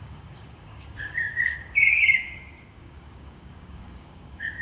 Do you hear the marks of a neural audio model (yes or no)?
yes